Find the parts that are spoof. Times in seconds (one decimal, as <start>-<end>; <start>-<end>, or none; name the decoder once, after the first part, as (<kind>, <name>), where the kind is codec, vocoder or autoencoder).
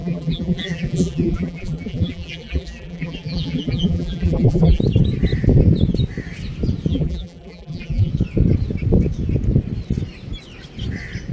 0.0-4.8 (vocoder, BigVGAN v2); 6.9-8.1